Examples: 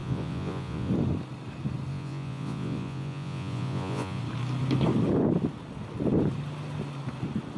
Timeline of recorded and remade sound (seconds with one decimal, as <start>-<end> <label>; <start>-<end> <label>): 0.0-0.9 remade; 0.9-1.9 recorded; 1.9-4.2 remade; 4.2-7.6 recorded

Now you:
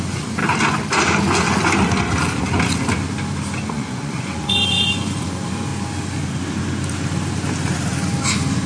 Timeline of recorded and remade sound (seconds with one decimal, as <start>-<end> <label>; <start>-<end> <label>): 0.0-0.4 remade; 0.4-3.7 recorded; 3.7-5.7 remade; 5.7-8.7 recorded

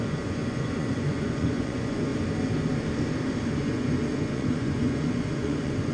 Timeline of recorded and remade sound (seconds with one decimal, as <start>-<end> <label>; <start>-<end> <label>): 0.0-2.1 remade; 2.1-3.5 recorded; 3.5-5.9 remade

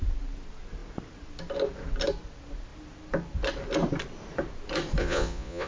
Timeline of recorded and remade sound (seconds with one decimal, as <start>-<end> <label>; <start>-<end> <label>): 0.0-5.0 recorded; 5.0-5.7 remade

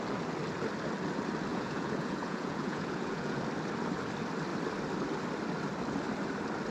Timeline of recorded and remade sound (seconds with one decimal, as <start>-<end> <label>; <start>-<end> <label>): 0.0-1.5 recorded; 1.5-3.4 remade; 3.4-6.7 recorded

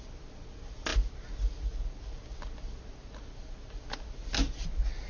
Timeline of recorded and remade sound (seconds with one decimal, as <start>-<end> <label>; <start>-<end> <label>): 0.0-5.1 recorded